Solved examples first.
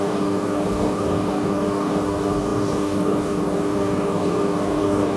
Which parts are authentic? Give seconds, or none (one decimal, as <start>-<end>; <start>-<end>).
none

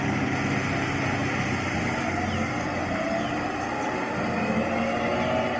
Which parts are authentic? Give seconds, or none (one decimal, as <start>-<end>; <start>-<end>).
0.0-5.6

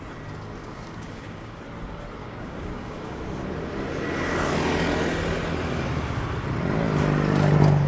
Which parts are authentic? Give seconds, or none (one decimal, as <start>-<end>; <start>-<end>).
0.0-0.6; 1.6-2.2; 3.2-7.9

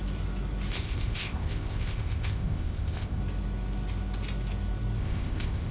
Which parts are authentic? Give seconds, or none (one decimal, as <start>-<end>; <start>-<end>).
0.0-0.7; 3.2-5.0

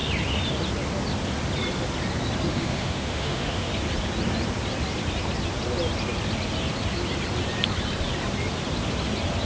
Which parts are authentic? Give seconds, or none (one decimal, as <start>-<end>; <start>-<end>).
0.0-2.5; 3.7-9.5